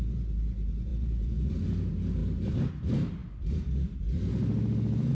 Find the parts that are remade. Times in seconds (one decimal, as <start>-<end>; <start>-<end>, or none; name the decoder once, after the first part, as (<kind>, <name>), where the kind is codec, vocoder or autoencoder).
0.9-1.5 (vocoder, Vocos)